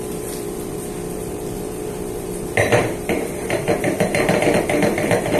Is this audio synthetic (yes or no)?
yes